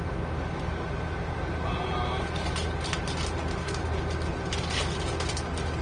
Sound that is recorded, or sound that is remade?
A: recorded